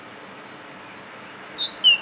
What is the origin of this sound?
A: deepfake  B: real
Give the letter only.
B